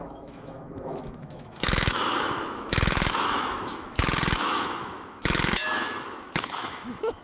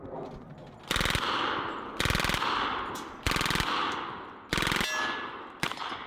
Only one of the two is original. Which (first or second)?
second